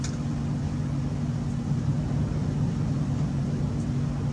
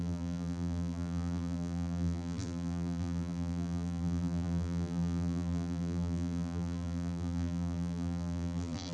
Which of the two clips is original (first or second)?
first